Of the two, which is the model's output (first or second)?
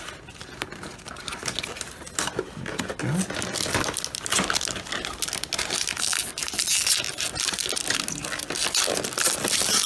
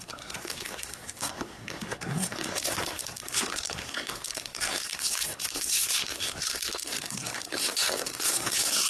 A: second